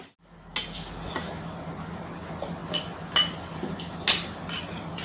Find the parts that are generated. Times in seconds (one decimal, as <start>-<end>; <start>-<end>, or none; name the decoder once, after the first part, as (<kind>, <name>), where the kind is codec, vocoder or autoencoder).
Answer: none